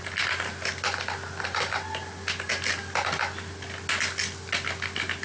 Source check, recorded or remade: recorded